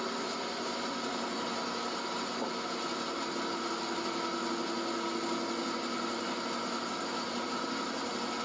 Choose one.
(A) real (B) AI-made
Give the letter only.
A